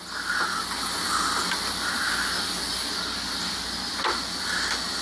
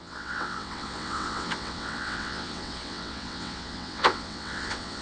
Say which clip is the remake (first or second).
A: second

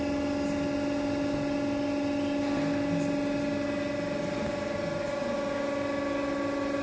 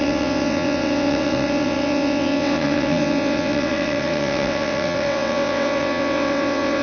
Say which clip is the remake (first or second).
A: second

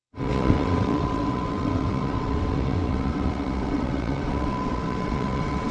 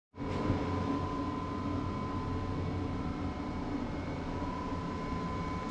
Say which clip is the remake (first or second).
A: first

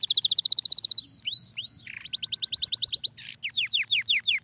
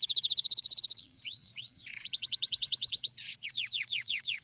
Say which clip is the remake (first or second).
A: second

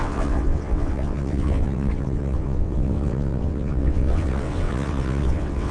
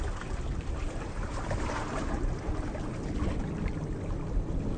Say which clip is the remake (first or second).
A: first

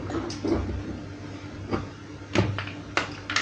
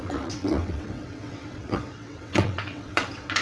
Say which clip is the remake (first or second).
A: second